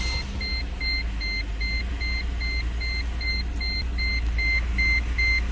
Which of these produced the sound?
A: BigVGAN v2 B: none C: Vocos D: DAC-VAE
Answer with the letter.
B